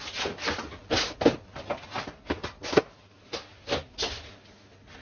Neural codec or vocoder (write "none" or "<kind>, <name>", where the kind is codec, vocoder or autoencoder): none